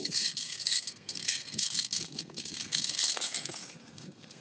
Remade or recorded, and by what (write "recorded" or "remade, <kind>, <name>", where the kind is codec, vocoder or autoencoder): remade, codec, SNAC